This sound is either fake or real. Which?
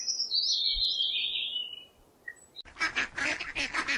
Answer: real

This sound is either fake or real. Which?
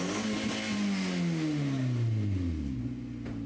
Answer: real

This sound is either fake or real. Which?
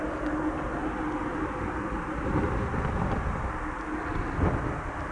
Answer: real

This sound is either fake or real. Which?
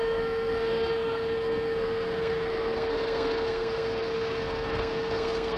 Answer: fake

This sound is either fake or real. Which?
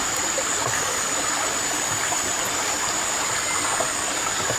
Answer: real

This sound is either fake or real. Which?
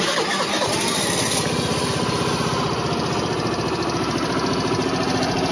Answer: real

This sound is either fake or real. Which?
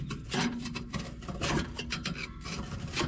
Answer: fake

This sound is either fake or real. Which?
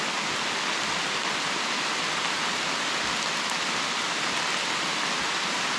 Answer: real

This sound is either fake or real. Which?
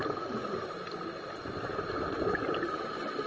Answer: real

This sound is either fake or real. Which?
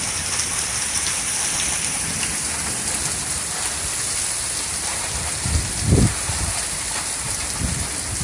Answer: real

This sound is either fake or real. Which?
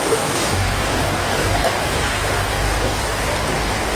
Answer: fake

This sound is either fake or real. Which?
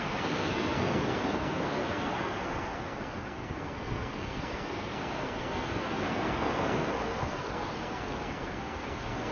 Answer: fake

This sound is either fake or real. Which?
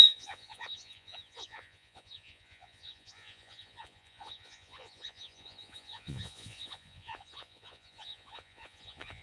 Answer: fake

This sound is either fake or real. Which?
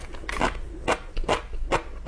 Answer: real